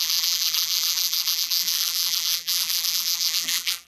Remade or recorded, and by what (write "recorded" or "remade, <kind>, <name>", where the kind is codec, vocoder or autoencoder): remade, vocoder, BigVGAN v2